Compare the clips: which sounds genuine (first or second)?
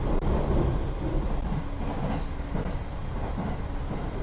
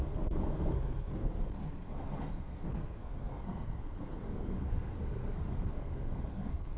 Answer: first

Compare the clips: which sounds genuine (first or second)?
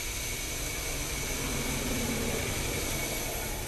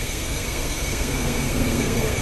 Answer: first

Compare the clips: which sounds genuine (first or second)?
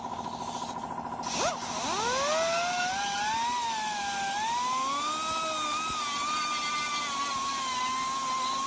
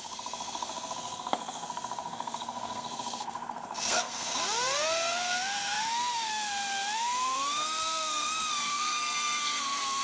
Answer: first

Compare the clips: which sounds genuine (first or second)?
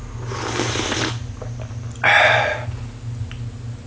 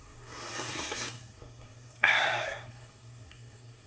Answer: first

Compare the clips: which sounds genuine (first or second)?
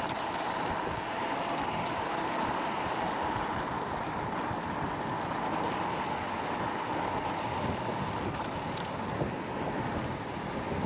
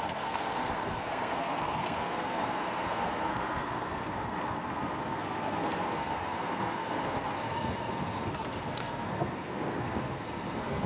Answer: first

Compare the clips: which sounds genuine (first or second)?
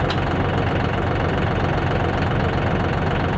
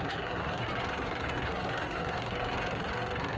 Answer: first